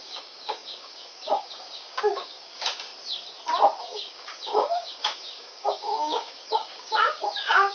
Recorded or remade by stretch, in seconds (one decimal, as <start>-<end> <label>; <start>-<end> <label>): 0.0-2.9 remade; 2.9-3.8 recorded; 3.8-7.7 remade